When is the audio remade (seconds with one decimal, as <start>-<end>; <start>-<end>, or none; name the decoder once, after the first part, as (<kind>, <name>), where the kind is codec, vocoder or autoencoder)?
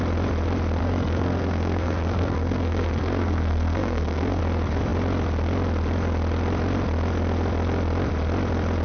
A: 0.8-4.4 (codec, SNAC)